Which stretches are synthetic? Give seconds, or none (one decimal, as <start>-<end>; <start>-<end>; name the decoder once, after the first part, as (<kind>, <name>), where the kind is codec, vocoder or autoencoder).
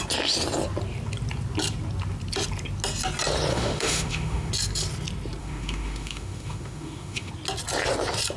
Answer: 3.5-4.5 (autoencoder, DAC-VAE); 5.4-7.3